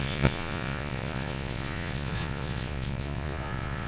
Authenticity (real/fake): fake